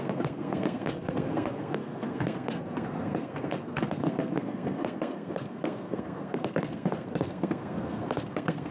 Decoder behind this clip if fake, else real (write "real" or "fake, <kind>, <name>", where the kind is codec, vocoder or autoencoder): fake, codec, SNAC